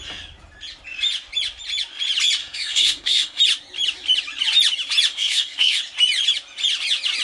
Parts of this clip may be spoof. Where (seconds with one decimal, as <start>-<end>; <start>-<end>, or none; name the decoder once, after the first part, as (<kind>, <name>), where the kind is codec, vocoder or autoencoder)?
2.4-3.4 (codec, SNAC); 5.1-5.8